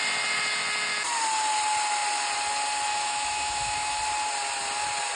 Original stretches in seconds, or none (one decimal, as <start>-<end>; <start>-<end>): 0.0-2.9; 4.0-5.2